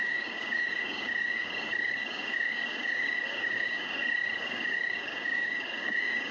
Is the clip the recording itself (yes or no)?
no